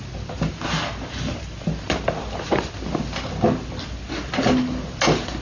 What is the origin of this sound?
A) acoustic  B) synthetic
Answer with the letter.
A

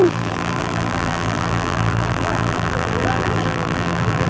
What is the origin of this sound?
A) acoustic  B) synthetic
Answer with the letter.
B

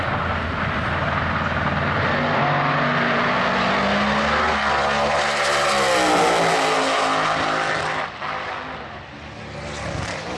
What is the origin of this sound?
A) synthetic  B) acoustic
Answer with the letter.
B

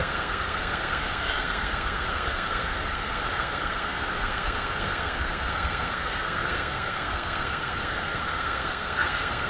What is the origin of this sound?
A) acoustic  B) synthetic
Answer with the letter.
B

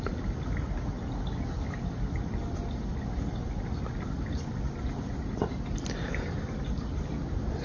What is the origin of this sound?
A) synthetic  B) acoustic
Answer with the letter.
B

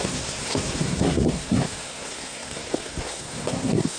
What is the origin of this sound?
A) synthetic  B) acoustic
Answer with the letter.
A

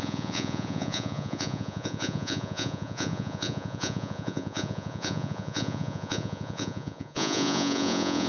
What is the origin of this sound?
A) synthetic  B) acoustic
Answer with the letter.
A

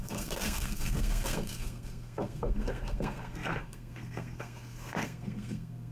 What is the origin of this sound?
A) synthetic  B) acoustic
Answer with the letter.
A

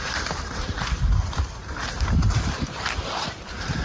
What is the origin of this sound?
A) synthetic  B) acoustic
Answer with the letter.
A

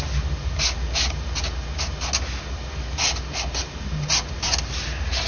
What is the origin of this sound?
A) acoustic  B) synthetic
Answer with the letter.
A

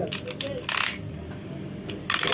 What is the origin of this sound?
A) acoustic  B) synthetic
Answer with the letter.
A